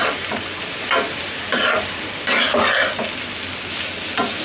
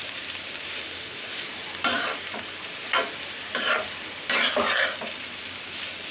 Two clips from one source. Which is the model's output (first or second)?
second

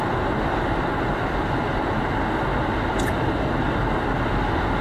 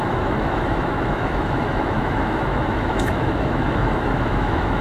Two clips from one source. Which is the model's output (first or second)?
second